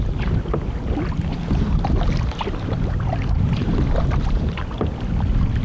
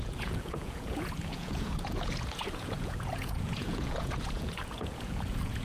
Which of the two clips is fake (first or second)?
second